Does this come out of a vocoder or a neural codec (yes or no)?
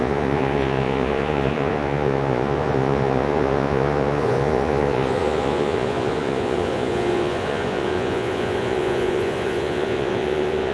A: yes